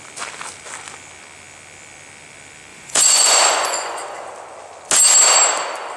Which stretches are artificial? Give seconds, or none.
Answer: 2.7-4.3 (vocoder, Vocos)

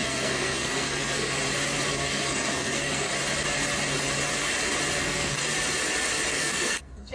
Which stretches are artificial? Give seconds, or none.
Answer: 0.0-1.4 (codec, SNAC); 1.9-3.1; 5.0-5.4; 6.3-7.1

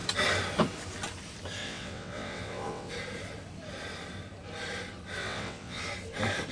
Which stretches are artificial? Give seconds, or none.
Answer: 1.6-2.9 (vocoder, WaveNeXt); 5.2-5.8

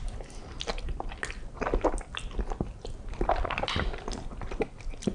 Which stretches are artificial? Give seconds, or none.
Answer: none

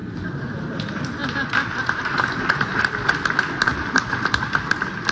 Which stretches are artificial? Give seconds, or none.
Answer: 0.0-1.2 (vocoder, BigVGAN v2); 2.8-5.1

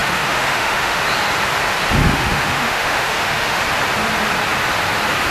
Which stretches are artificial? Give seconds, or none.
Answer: 0.0-1.0 (autoencoder, DAC-VAE); 2.0-3.6

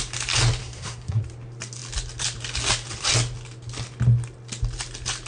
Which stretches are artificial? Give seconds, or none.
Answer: 0.6-1.2 (codec, SNAC)

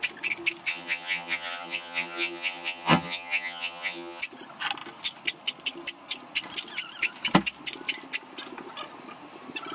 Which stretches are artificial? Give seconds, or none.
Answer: 0.7-4.2 (vocoder, HiFi-GAN)